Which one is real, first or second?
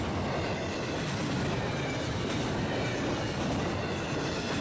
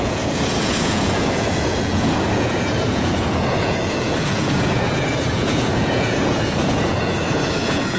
first